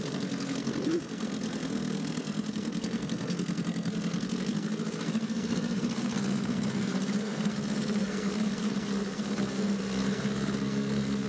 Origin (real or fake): fake